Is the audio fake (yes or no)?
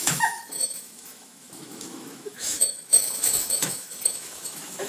yes